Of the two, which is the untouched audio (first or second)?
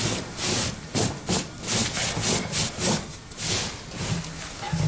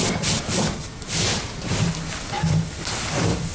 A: first